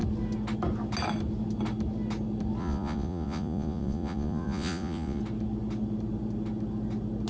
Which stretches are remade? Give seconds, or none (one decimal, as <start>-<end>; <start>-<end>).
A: 2.6-5.2